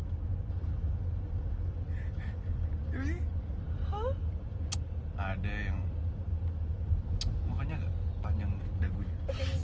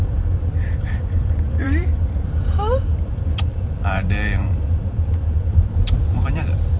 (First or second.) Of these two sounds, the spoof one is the second